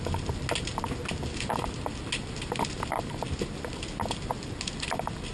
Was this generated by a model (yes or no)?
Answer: no